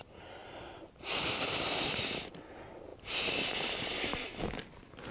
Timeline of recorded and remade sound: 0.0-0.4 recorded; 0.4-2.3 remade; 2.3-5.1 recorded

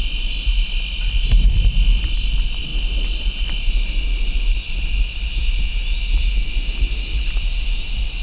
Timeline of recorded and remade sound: 0.0-8.2 recorded

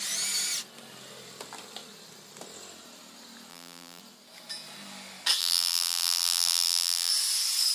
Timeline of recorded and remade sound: 0.0-3.5 recorded; 3.5-4.0 remade; 4.0-5.4 recorded; 5.4-7.1 remade; 7.1-7.7 recorded

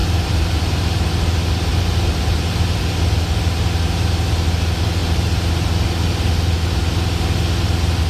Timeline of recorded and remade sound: 0.0-1.1 remade; 1.1-1.7 recorded; 1.7-2.8 remade; 2.8-8.1 recorded